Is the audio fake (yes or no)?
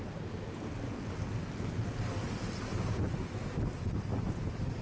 no